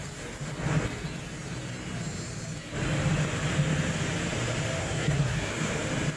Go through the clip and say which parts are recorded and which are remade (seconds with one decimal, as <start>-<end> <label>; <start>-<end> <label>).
0.0-4.8 recorded; 4.8-5.7 remade; 5.7-6.2 recorded